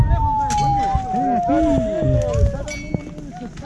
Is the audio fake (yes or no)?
no